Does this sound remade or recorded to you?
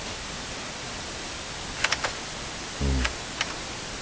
recorded